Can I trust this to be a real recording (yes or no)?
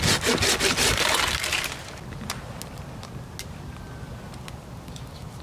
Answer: yes